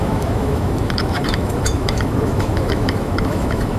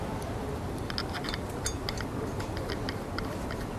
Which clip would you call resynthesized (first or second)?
first